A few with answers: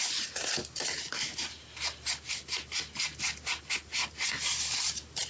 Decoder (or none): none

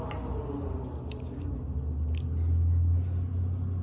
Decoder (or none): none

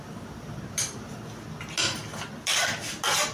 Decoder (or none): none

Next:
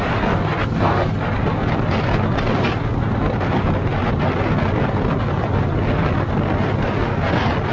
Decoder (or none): none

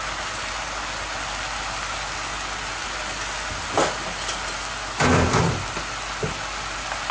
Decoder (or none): none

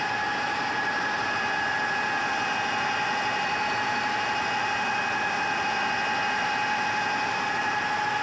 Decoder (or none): none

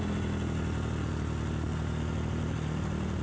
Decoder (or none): none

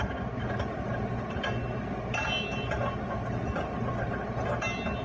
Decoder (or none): none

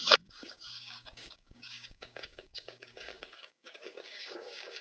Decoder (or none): codec, DAC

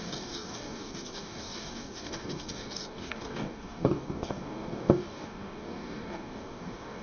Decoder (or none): codec, DAC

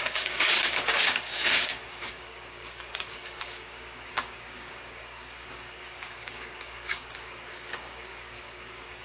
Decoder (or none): codec, DAC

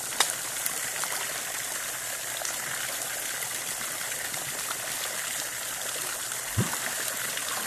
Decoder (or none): none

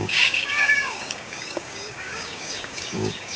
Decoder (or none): codec, DAC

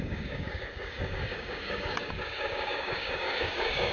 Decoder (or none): codec, DAC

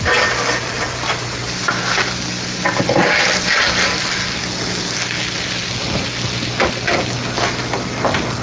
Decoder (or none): none